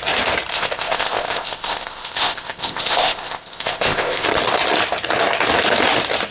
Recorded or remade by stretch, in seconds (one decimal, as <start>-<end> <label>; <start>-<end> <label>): 0.0-0.5 recorded; 0.5-4.3 remade; 4.3-6.3 recorded